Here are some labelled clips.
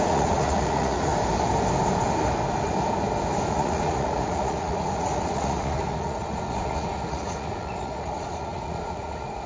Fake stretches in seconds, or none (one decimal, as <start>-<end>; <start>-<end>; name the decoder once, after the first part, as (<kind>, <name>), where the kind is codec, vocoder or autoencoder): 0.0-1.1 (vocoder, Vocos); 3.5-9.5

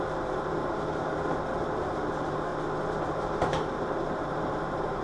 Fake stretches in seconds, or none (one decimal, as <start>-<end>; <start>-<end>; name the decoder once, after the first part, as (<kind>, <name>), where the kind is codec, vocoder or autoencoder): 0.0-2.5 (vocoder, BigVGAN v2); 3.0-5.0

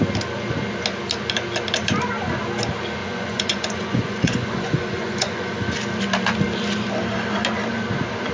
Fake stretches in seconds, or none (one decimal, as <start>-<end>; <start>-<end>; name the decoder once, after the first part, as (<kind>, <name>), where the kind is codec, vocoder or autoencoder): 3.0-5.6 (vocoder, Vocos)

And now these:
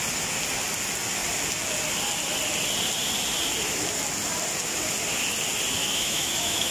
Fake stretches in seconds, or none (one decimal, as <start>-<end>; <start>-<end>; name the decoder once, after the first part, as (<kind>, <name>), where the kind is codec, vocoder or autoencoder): 5.8-6.7 (autoencoder, DAC-VAE)